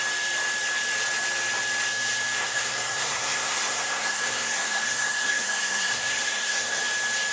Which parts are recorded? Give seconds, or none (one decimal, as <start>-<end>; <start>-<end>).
0.0-2.4; 6.8-7.3